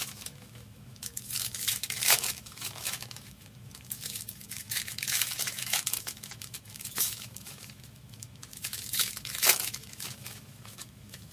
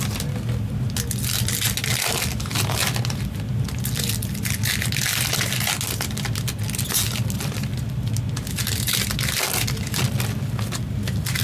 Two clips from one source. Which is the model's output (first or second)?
first